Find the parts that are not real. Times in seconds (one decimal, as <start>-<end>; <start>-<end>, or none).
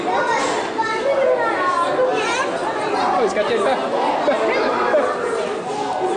none